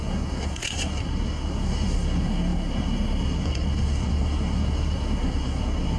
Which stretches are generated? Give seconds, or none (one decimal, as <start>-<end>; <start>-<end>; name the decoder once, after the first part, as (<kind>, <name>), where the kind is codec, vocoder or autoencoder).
0.0-6.0 (codec, SNAC)